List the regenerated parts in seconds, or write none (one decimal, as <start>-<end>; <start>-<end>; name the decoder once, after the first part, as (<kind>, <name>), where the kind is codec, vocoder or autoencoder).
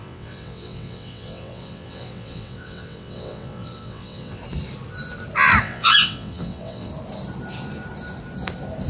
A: 0.0-4.4 (vocoder, WaveNeXt); 5.6-6.9